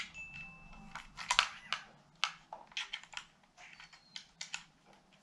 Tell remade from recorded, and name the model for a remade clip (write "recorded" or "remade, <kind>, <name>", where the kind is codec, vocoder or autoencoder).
recorded